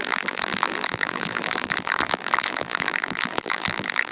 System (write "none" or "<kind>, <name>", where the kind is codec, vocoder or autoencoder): vocoder, BigVGAN v2